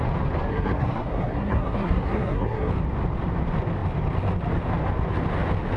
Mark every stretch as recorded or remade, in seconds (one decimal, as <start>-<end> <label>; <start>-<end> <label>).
0.0-0.5 recorded; 0.5-2.7 remade; 2.7-5.8 recorded